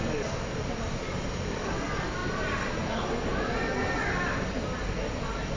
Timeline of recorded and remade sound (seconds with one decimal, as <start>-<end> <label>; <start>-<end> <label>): 0.0-5.6 recorded

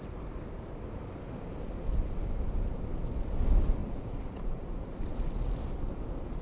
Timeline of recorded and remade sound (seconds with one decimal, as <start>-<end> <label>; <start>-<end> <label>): 0.0-3.8 recorded; 3.8-5.0 remade; 5.0-6.4 recorded

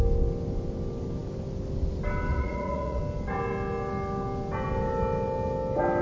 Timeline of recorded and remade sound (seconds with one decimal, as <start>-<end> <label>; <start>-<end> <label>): 0.0-2.3 recorded; 2.3-3.0 remade; 3.0-6.0 recorded

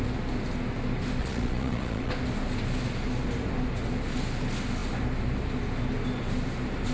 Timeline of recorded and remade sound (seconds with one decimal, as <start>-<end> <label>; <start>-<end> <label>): 0.0-1.2 recorded; 1.2-2.1 remade; 2.1-6.9 recorded

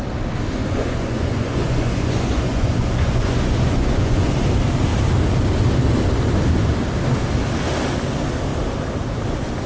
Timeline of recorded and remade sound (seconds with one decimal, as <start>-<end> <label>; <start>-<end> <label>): 0.0-0.6 recorded; 0.6-4.3 remade; 4.3-9.7 recorded